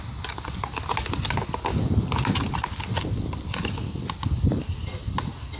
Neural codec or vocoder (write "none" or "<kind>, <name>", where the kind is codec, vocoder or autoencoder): none